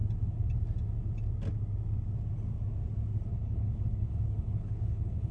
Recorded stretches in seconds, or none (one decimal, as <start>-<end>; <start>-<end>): 0.0-3.3